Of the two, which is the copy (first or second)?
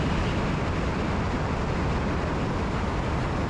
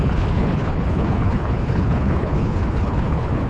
second